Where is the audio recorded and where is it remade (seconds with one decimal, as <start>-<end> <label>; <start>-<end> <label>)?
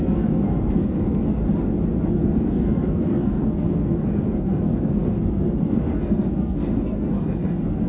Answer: 0.0-1.4 remade; 1.4-2.1 recorded; 2.1-7.9 remade